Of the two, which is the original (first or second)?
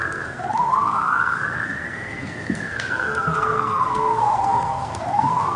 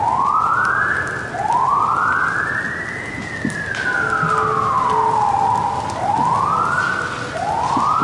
second